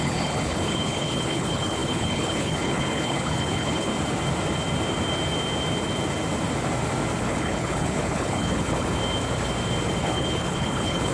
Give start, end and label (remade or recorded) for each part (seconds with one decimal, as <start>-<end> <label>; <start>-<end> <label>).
0.0-3.9 remade; 3.9-7.2 recorded; 7.2-9.0 remade; 9.0-10.0 recorded; 10.0-11.1 remade